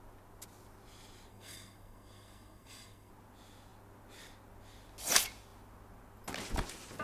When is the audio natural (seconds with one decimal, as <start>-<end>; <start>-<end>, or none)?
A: 0.0-1.3; 3.1-7.0